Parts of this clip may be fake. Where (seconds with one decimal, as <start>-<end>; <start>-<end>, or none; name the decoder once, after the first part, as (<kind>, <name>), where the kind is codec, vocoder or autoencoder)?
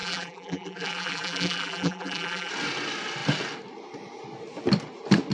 0.0-2.5 (vocoder, BigVGAN v2)